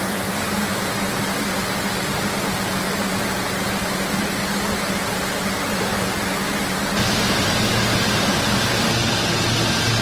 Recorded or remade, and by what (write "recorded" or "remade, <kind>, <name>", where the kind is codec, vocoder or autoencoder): recorded